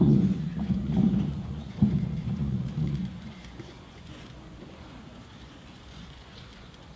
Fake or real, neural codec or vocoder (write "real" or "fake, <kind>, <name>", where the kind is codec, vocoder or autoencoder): fake, vocoder, Vocos